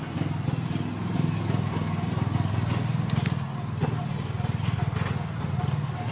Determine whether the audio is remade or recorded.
recorded